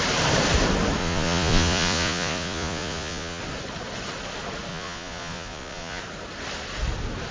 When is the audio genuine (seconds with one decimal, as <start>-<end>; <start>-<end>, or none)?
0.0-1.0; 3.4-4.7; 6.0-7.3